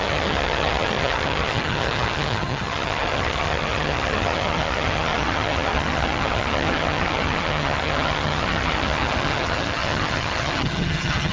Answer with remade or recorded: remade